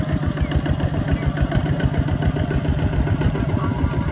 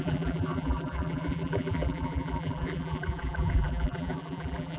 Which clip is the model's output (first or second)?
second